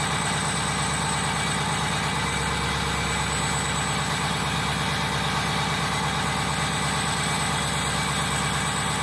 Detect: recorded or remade recorded